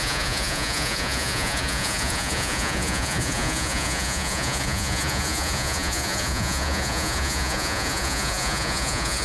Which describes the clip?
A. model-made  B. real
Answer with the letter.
A